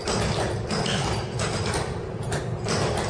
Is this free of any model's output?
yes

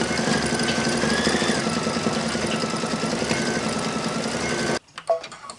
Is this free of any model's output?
yes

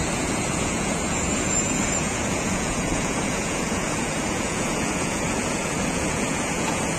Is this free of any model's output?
no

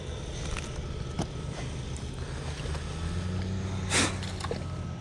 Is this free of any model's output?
yes